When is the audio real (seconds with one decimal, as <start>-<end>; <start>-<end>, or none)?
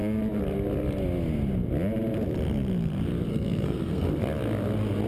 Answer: 0.0-3.3; 4.1-5.1